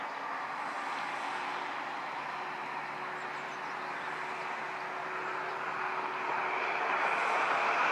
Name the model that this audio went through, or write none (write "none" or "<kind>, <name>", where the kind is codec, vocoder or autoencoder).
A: none